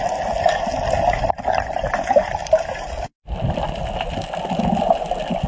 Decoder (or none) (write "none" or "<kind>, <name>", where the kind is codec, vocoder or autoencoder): none